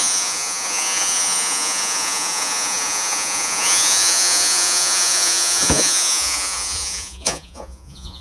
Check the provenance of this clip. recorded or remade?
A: remade